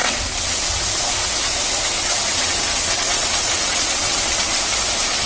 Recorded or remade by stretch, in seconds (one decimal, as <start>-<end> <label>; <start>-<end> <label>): 0.0-0.8 remade; 0.8-2.0 recorded; 2.0-4.2 remade; 4.2-5.3 recorded